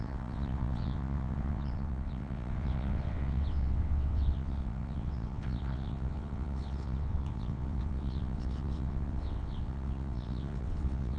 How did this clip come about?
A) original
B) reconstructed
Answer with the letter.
B